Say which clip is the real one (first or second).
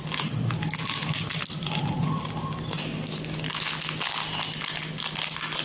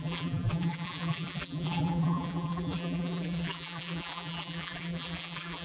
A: first